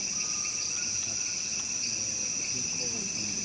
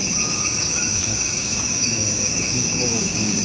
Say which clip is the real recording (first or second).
first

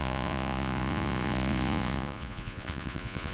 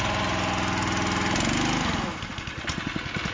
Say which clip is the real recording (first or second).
second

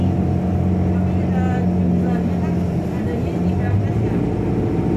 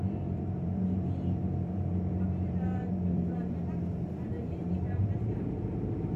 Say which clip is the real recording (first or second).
first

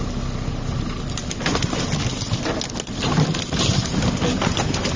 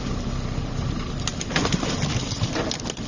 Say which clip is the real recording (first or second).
first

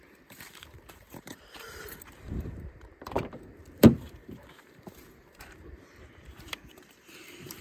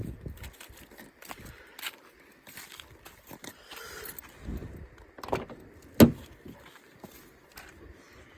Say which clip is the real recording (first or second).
second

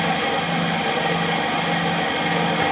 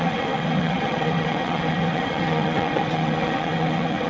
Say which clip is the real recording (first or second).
first